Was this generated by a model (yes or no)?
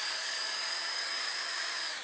yes